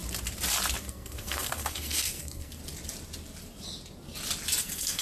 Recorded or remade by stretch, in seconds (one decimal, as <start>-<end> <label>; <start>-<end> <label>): 0.0-0.8 recorded; 0.8-2.6 remade; 2.6-4.6 recorded; 4.6-5.0 remade